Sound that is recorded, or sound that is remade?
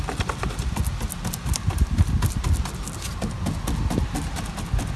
recorded